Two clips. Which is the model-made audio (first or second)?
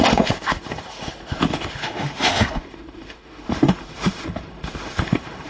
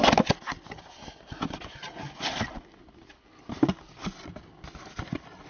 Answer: first